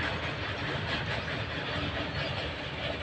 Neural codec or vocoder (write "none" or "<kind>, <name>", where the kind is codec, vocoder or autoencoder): none